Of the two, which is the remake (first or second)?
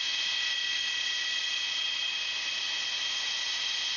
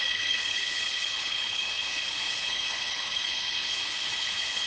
second